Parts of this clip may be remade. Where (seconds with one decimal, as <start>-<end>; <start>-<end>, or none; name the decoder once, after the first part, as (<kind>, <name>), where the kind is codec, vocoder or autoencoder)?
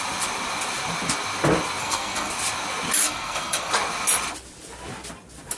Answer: 1.8-2.3 (codec, SNAC); 3.0-3.7